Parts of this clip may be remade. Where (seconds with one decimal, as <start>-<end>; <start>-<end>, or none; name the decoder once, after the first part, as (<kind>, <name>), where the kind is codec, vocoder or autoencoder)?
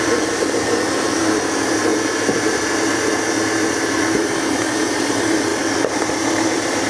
0.0-1.9 (vocoder, BigVGAN v2); 3.7-5.5; 6.1-6.9